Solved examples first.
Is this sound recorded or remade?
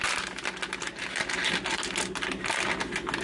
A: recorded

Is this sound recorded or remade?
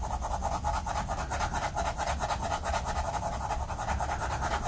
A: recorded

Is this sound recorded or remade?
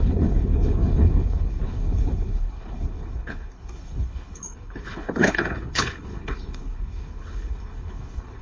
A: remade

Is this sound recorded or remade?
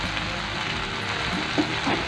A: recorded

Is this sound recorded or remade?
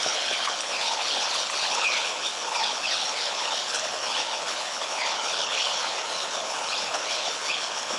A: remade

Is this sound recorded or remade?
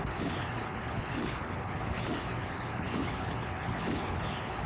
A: remade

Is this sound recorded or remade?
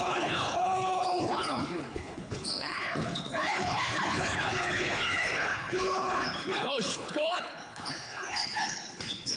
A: remade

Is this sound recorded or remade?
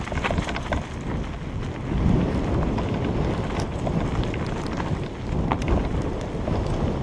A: recorded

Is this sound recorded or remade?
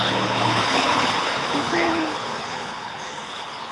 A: remade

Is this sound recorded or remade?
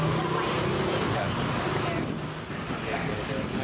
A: recorded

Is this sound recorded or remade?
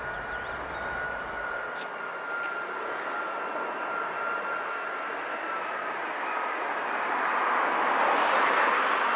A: recorded